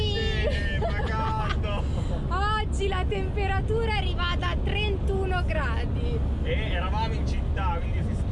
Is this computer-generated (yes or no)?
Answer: no